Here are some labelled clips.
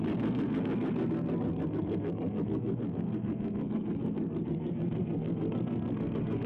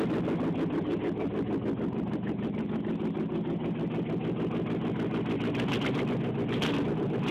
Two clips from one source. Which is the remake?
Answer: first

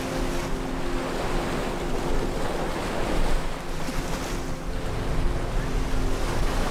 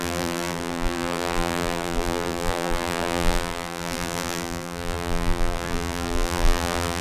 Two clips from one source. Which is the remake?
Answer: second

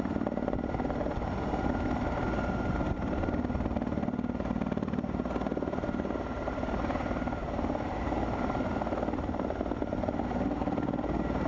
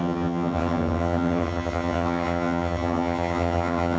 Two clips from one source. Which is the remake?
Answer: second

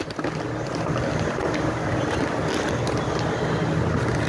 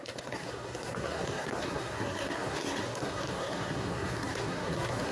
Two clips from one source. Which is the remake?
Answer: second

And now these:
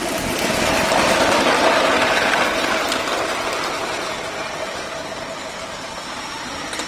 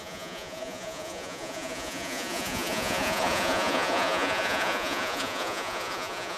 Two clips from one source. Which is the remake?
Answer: second